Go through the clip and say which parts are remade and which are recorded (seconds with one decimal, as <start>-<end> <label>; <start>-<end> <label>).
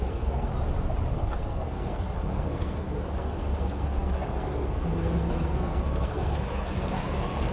0.0-0.5 remade; 0.5-1.1 recorded; 1.1-7.5 remade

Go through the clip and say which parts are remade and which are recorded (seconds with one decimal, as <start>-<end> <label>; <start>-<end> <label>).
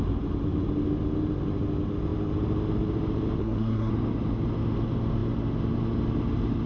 0.0-3.4 recorded; 3.4-3.9 remade; 3.9-6.7 recorded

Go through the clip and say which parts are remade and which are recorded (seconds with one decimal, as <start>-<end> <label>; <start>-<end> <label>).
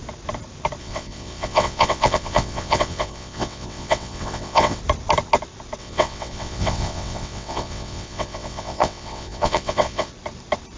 0.0-0.8 recorded; 0.8-4.8 remade; 4.8-5.8 recorded; 5.8-10.1 remade; 10.1-10.8 recorded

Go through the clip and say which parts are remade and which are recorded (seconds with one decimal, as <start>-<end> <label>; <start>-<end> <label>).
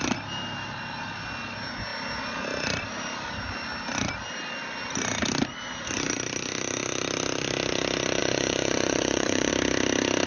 0.0-8.2 recorded; 8.2-9.5 remade; 9.5-10.3 recorded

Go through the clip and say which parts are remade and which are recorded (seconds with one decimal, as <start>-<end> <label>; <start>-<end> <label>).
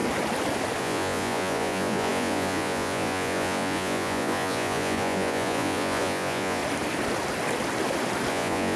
0.0-0.8 recorded; 0.8-6.6 remade; 6.6-8.3 recorded; 8.3-8.8 remade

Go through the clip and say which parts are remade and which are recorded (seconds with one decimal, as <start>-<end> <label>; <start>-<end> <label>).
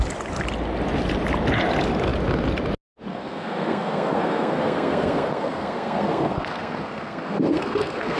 0.0-3.1 recorded; 3.1-8.2 remade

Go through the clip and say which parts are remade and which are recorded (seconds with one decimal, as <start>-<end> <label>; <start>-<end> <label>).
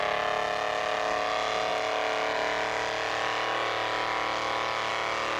0.0-5.4 recorded